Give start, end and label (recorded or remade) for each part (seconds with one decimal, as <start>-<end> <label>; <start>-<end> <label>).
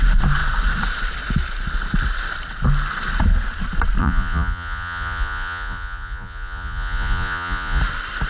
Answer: 0.0-4.0 recorded; 4.0-7.8 remade; 7.8-8.3 recorded